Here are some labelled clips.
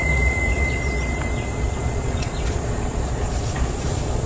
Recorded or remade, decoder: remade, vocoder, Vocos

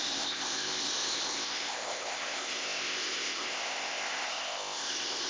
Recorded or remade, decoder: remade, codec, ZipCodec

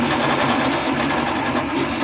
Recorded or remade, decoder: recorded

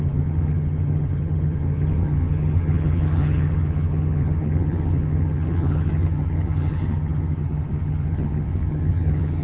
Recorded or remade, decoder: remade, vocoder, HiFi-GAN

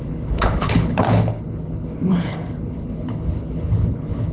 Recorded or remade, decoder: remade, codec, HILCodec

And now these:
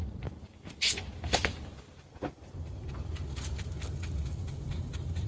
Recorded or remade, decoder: recorded